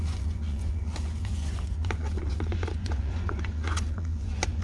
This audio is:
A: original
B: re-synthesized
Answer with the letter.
B